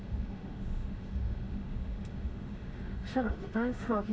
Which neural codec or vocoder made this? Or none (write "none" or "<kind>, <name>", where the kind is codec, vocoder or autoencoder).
autoencoder, DAC-VAE